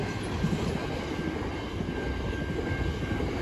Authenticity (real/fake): real